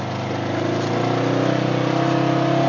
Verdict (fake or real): real